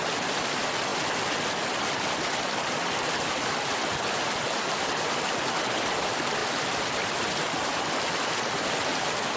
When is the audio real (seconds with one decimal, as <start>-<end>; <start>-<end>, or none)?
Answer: 0.0-9.4